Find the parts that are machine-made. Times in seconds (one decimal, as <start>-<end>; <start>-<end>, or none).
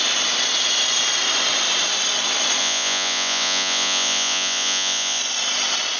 2.6-5.2